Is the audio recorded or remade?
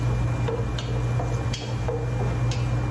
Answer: recorded